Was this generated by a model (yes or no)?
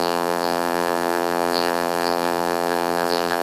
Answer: yes